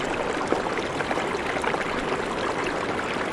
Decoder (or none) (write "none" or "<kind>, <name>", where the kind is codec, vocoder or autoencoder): none